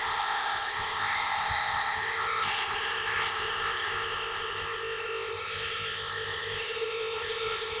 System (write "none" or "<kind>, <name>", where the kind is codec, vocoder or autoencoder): codec, ZipCodec